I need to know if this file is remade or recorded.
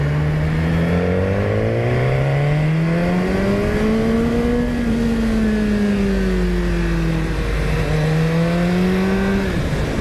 recorded